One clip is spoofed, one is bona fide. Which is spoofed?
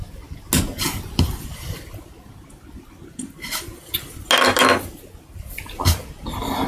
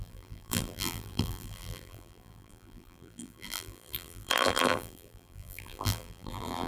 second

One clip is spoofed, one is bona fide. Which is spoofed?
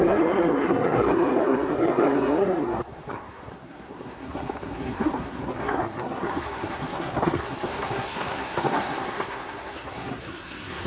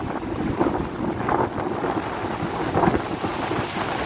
first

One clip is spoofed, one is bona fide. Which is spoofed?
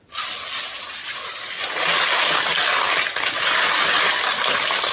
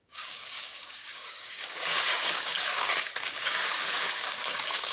second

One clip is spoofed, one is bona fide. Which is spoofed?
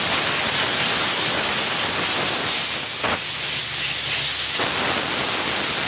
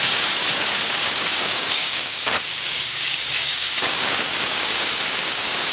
second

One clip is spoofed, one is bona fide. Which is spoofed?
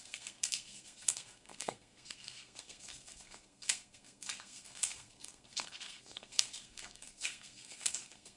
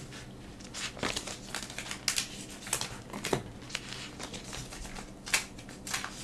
first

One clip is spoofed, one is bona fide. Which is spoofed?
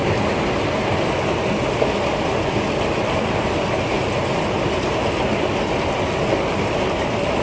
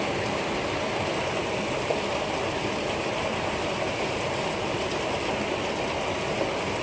second